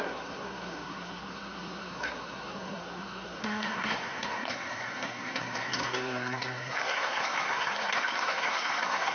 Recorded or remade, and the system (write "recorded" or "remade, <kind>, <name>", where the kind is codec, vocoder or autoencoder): remade, codec, SNAC